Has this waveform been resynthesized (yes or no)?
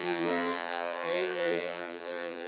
yes